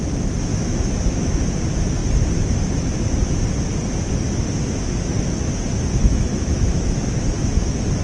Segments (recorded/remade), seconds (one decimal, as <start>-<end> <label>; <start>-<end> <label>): 0.0-0.5 recorded; 0.5-1.5 remade; 1.5-6.0 recorded; 6.0-7.1 remade; 7.1-8.0 recorded